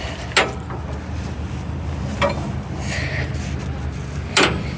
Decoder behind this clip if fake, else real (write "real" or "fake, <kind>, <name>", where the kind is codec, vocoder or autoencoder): real